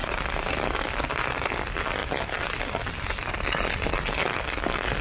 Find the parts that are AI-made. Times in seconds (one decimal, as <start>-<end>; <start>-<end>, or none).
none